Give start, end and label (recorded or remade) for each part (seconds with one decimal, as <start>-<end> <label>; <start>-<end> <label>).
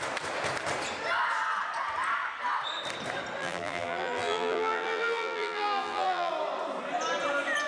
0.0-3.4 recorded; 3.4-6.3 remade; 6.3-7.7 recorded